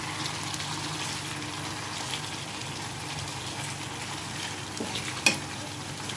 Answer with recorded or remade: recorded